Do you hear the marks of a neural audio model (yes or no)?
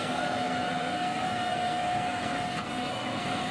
yes